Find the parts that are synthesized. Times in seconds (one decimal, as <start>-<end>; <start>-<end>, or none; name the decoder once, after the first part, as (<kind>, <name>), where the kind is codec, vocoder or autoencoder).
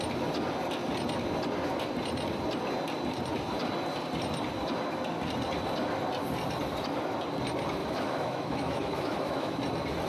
7.8-9.6 (autoencoder, DAC-VAE)